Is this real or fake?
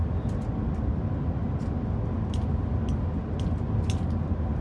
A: real